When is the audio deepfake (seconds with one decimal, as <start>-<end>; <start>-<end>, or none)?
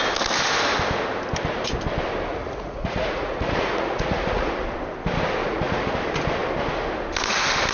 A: 2.3-4.5; 5.4-5.9